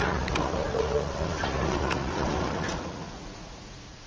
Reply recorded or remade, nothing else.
remade